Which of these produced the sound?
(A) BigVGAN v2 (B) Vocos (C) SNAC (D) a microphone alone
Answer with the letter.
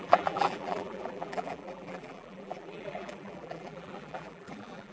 A